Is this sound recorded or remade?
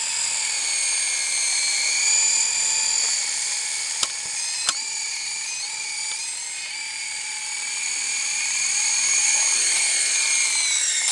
recorded